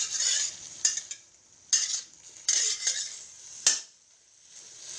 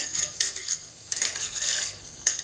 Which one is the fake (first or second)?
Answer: second